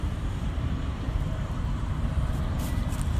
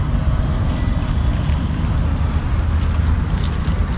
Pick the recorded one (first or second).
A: second